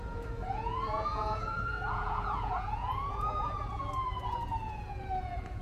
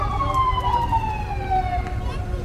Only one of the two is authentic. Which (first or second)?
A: second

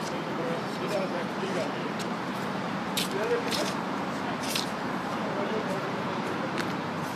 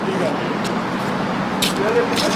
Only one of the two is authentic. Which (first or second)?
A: second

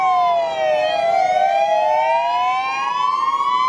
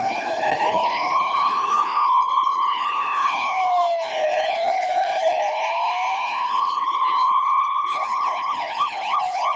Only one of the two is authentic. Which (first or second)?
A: first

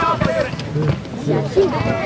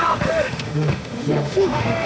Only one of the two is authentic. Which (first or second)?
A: first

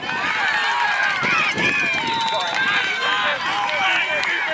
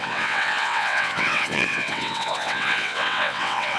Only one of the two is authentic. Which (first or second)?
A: first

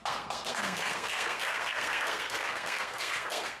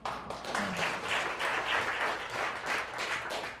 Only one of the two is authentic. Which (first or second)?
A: second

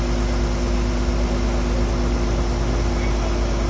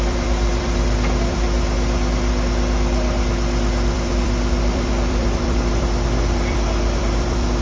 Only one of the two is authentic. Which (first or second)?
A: first